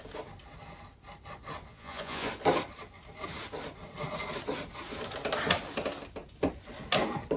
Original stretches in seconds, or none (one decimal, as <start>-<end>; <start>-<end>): 0.0-1.7; 2.3-7.4